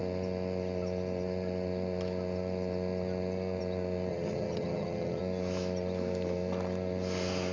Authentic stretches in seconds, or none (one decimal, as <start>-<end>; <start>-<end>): 0.0-4.1; 5.2-7.5